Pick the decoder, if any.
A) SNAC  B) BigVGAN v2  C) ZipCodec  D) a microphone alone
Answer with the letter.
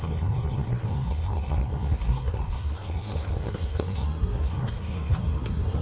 A